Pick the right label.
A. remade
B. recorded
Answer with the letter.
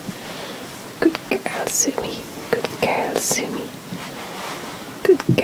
B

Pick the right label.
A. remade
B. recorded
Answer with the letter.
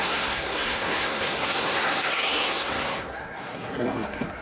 A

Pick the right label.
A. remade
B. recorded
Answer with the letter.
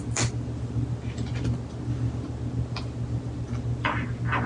B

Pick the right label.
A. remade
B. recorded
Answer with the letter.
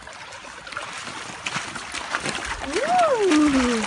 B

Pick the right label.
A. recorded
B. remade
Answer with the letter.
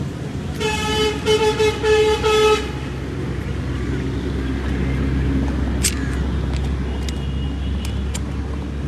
A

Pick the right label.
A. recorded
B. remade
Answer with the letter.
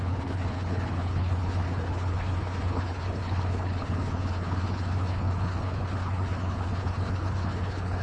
B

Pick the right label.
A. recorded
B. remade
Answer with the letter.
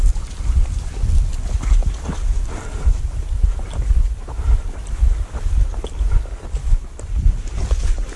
A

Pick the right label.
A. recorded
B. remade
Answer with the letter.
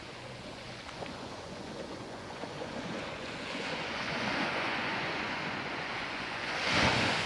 B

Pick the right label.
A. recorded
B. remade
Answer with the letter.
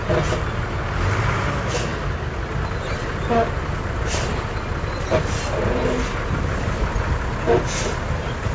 A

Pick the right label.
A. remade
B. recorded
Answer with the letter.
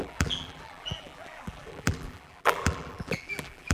A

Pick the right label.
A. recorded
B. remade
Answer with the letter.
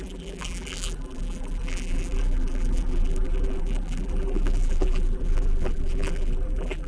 B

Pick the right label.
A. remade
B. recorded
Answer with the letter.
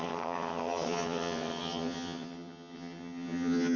A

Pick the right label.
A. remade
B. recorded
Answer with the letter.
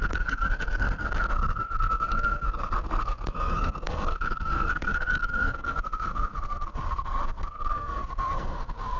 A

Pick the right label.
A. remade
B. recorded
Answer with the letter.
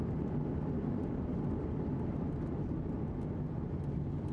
B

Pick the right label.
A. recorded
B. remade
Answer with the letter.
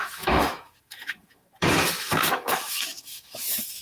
B